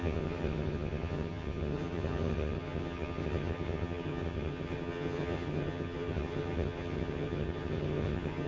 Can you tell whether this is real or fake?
fake